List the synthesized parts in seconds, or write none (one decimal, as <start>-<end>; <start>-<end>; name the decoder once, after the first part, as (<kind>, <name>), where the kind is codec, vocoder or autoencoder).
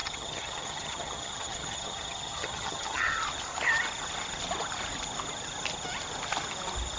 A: 0.0-3.2 (vocoder, HiFi-GAN)